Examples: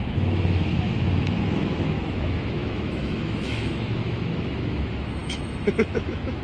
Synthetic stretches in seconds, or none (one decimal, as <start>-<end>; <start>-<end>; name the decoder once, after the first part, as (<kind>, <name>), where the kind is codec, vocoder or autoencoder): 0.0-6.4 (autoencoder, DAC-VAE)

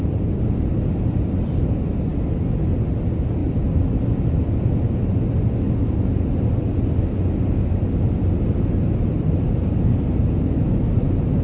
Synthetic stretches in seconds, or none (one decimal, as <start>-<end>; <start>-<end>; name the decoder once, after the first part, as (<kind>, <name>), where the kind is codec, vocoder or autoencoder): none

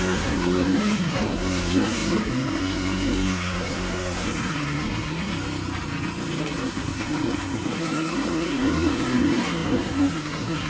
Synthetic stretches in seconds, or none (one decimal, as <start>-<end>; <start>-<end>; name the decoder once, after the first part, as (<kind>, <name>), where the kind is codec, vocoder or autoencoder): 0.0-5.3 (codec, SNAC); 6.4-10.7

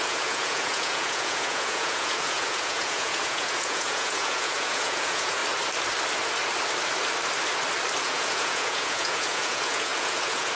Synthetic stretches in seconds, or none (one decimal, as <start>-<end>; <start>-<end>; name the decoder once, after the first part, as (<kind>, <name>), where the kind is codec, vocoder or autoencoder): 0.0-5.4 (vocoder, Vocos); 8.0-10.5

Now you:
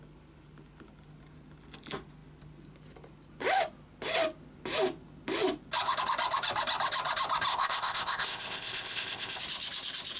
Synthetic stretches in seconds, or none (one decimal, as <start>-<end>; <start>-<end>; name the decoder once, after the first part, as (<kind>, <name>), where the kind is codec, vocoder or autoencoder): 7.5-9.4 (codec, ZipCodec)

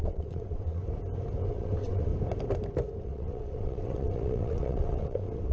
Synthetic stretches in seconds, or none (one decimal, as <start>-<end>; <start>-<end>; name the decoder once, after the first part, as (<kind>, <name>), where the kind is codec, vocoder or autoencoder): 0.0-0.8 (vocoder, WaveNeXt); 1.5-2.1; 3.0-5.5